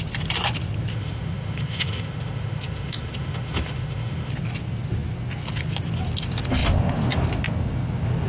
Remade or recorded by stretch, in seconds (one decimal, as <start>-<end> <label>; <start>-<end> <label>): 0.0-0.9 recorded; 0.9-4.3 remade; 4.3-8.3 recorded